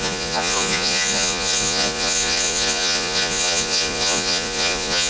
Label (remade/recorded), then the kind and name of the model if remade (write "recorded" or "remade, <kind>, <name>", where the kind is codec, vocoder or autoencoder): remade, vocoder, Vocos